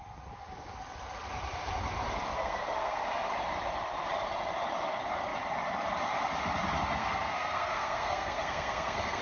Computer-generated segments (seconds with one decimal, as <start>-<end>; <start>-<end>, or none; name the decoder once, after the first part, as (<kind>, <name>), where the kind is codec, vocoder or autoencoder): 2.3-3.0 (codec, SNAC); 7.0-9.2